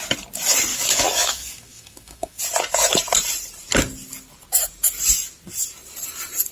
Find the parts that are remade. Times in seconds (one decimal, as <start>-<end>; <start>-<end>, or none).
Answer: 0.7-2.4